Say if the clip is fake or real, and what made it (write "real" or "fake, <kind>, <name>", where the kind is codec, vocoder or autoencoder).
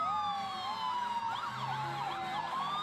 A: real